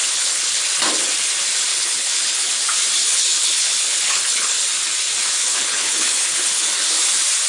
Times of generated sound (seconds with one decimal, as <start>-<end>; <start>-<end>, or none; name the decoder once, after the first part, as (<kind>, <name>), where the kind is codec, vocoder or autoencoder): 0.0-0.6 (codec, HILCodec); 1.7-2.5; 3.0-4.7; 5.4-6.6